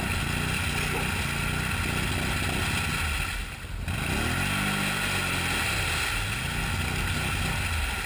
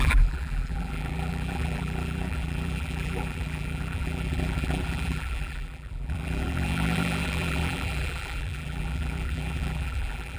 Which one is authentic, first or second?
first